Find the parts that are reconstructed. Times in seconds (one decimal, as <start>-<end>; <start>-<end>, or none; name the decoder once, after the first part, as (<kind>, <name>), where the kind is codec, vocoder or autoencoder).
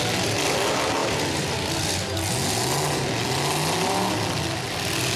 none